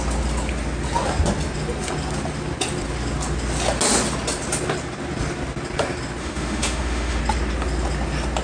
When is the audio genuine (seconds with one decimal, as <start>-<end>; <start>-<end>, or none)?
0.0-6.2; 7.2-8.4